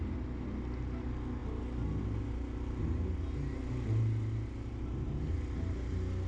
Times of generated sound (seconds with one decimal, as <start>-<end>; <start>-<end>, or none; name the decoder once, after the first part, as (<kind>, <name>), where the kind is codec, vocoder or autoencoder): none